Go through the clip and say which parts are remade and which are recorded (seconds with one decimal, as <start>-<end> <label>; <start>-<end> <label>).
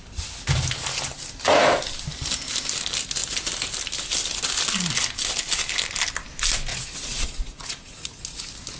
0.0-6.7 recorded; 6.7-8.2 remade; 8.2-8.8 recorded